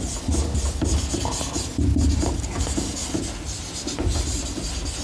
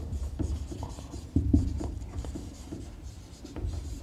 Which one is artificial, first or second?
second